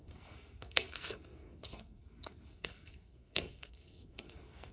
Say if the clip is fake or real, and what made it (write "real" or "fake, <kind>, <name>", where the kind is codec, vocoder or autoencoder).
fake, codec, SNAC